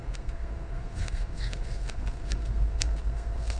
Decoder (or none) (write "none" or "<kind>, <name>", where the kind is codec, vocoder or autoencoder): codec, SNAC